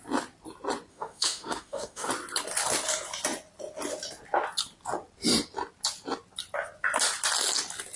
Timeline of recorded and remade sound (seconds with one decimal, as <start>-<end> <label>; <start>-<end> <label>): 0.0-0.9 recorded; 0.9-2.1 remade; 2.1-8.0 recorded

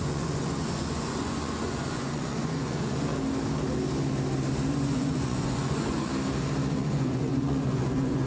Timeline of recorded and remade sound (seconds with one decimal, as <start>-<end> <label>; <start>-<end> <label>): 0.0-3.1 remade; 3.1-4.7 recorded; 4.7-6.1 remade; 6.1-6.7 recorded; 6.7-8.3 remade

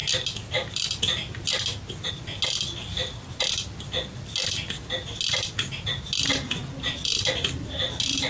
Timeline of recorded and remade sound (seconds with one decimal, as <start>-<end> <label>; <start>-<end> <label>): 0.0-8.3 recorded

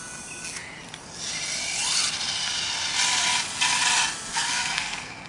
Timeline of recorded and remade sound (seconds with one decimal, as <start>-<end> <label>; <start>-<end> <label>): 0.0-4.3 recorded; 4.3-5.3 remade

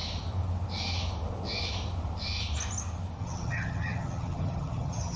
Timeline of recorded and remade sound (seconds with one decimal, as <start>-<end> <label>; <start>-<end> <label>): 0.0-3.2 recorded; 3.2-5.2 remade